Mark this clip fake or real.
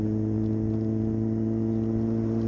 real